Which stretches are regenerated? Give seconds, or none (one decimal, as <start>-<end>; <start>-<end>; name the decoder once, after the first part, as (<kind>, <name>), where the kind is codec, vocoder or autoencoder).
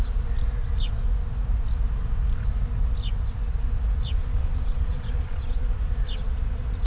4.2-5.6 (vocoder, Vocos)